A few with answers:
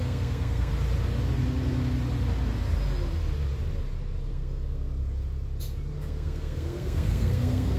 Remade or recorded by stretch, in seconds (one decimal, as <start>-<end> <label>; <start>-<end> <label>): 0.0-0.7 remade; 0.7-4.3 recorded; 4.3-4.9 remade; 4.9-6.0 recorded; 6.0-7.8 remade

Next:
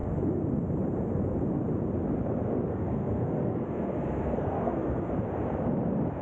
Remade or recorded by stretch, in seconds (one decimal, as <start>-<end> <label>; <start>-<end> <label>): 0.0-2.7 recorded; 2.7-5.1 remade; 5.1-6.2 recorded

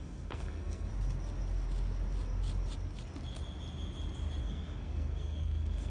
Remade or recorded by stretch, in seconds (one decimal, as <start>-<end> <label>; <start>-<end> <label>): 0.0-0.9 remade; 0.9-4.4 recorded; 4.4-5.9 remade

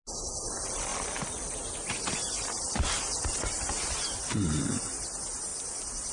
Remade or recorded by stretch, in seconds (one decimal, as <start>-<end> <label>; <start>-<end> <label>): 0.0-6.1 recorded

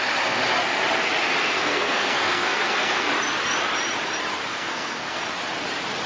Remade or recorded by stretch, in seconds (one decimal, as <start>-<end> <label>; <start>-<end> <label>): 0.0-1.4 recorded; 1.4-3.1 remade; 3.1-4.5 recorded; 4.5-5.2 remade; 5.2-6.1 recorded